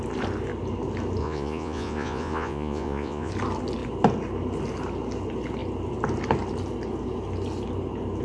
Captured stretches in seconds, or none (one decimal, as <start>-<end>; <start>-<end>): 0.0-1.2; 3.3-8.2